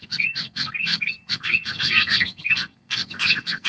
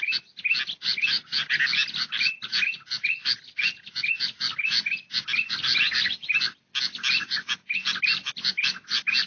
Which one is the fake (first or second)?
first